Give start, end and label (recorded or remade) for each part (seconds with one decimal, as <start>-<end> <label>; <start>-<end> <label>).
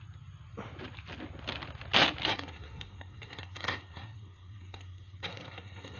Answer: 0.0-2.3 recorded; 2.3-6.0 remade